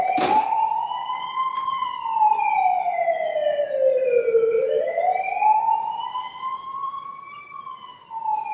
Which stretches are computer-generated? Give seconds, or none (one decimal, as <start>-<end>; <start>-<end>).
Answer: 1.0-1.9; 6.8-7.6